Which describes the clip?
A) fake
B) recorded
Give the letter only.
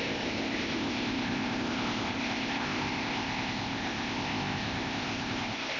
A